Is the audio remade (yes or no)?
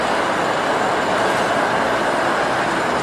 no